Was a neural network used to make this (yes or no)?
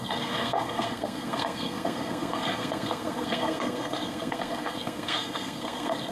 yes